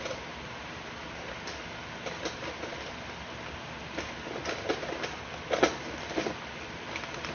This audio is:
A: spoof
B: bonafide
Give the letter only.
B